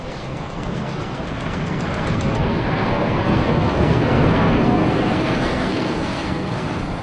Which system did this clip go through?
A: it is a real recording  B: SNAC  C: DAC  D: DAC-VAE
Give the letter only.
B